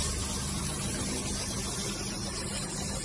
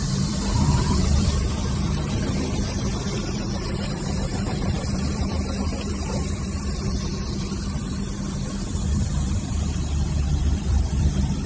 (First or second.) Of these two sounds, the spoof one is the second